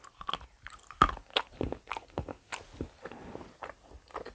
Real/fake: real